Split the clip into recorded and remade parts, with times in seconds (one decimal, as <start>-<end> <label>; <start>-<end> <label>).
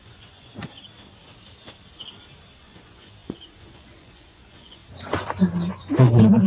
0.0-0.5 remade; 0.5-2.6 recorded; 2.6-4.8 remade; 4.8-5.7 recorded; 5.7-6.5 remade